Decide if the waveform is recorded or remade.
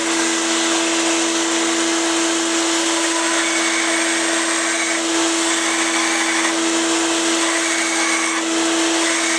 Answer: recorded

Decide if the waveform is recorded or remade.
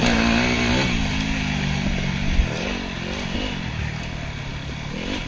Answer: recorded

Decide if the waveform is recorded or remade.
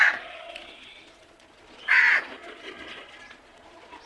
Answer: remade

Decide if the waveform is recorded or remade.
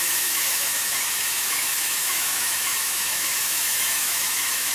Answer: remade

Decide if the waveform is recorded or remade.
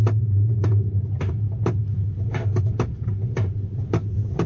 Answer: remade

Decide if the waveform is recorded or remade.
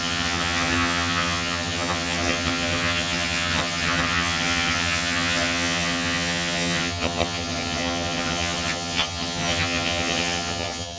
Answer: remade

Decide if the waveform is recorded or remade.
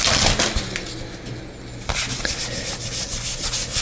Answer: recorded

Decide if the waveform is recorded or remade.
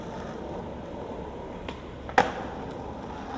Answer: recorded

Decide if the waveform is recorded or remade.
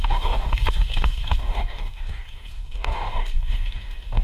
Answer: remade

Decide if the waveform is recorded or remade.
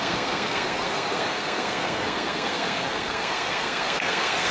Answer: remade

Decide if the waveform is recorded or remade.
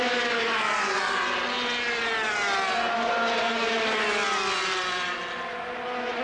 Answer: recorded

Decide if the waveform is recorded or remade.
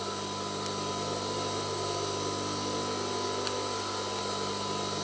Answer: recorded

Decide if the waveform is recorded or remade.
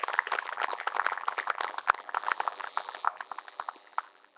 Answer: remade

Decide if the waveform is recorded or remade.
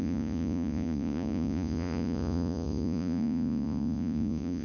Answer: remade